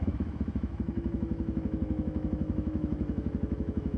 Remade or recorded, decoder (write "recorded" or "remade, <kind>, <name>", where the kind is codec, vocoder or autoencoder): remade, autoencoder, DAC-VAE